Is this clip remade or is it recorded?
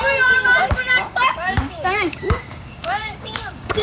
remade